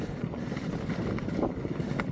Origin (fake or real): real